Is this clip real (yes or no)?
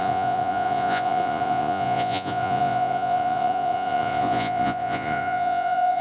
no